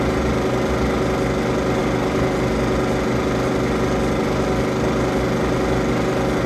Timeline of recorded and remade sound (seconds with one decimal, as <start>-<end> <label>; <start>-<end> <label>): 0.0-6.5 recorded